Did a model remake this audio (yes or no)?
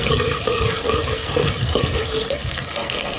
yes